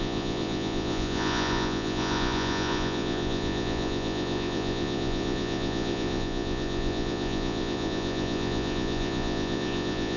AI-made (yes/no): yes